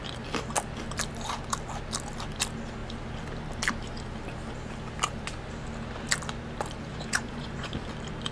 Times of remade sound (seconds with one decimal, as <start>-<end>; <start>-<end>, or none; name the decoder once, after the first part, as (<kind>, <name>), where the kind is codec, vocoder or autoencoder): 6.9-7.7 (vocoder, Vocos)